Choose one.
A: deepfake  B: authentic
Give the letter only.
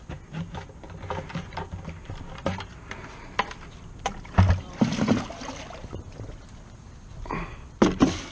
B